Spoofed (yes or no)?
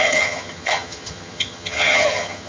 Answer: yes